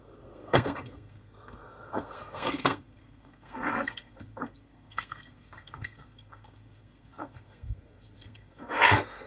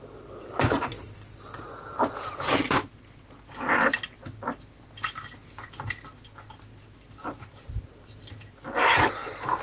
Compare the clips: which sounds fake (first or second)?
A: first